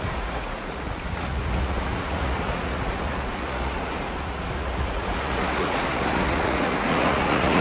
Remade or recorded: remade